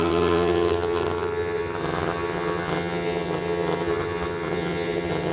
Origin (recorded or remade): remade